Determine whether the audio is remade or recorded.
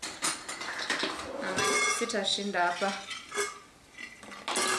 recorded